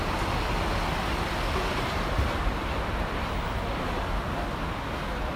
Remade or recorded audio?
recorded